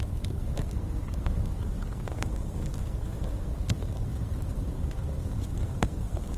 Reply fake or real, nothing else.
fake